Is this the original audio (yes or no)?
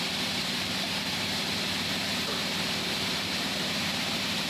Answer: no